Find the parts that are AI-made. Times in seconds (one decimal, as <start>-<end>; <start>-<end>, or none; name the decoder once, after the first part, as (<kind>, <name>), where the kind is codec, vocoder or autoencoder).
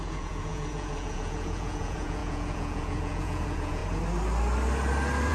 0.0-3.8 (vocoder, Vocos)